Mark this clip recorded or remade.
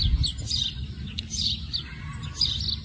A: recorded